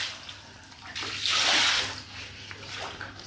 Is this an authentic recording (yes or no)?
yes